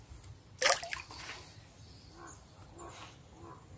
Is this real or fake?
real